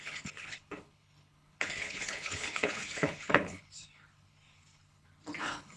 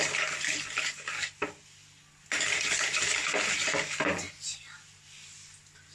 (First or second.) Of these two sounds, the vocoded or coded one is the first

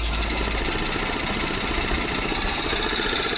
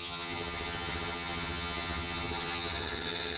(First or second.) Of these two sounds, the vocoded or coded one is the second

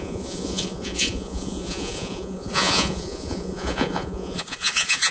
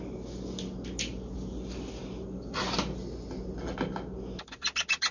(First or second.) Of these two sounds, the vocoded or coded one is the first